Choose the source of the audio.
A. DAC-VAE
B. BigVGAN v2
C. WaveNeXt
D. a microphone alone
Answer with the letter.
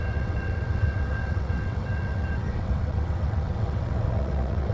C